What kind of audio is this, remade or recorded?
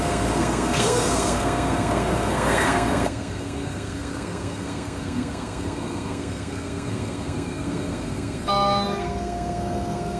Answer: remade